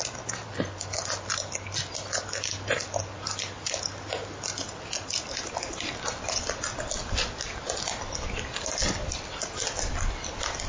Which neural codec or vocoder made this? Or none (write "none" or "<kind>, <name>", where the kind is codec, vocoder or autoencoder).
none